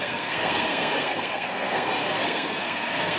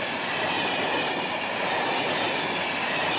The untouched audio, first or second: second